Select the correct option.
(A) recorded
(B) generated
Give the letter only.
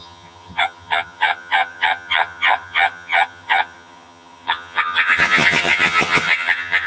B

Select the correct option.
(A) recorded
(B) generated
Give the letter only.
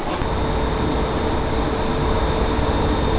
A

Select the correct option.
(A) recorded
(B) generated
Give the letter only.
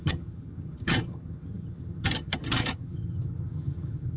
B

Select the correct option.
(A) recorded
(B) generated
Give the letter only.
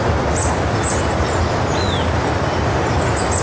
A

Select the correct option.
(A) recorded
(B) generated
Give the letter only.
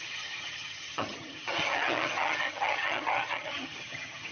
B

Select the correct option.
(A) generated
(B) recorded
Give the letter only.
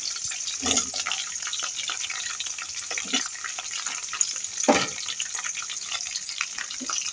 B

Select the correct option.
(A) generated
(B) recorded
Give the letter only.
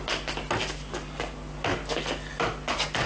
B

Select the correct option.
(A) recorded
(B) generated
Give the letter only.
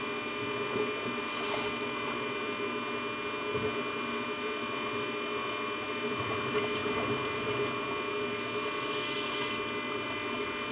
A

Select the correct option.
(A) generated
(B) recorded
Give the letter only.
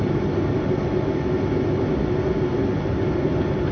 B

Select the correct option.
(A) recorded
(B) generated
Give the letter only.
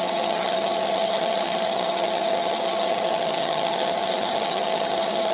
B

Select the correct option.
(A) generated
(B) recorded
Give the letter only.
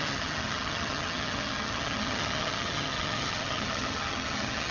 A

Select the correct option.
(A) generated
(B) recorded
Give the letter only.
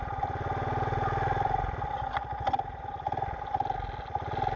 B